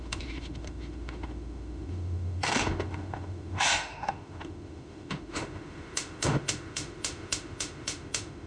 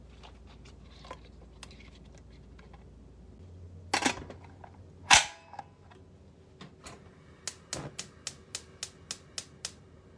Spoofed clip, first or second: first